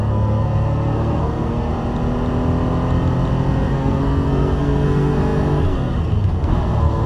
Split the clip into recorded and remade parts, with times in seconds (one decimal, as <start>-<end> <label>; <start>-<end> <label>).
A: 0.0-1.7 remade; 1.7-3.7 recorded; 3.7-7.1 remade